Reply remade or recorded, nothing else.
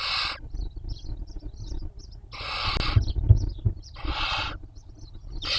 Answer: recorded